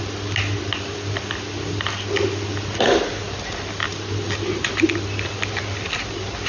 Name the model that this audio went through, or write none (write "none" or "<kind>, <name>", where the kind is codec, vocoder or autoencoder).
none